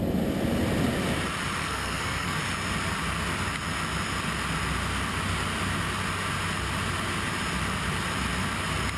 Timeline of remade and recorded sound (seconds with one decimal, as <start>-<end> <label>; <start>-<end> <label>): 0.0-1.6 recorded; 1.6-2.4 remade; 2.4-9.0 recorded